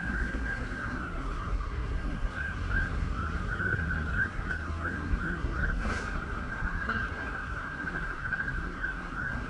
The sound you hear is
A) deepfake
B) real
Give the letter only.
A